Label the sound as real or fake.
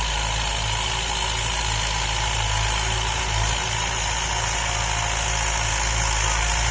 real